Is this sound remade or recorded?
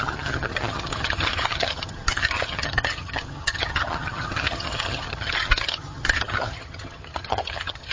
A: remade